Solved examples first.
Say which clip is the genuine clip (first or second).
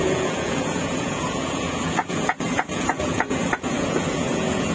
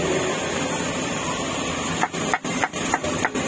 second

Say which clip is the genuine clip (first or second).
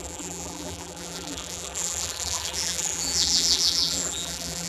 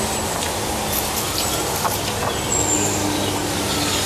second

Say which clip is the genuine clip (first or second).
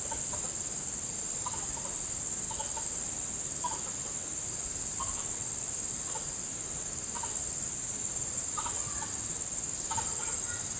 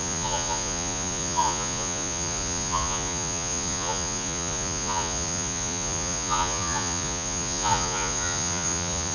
first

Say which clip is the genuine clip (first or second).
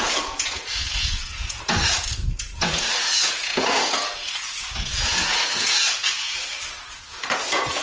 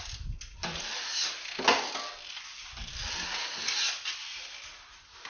second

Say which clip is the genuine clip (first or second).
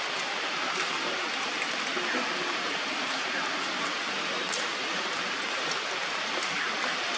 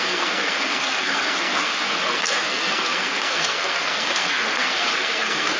first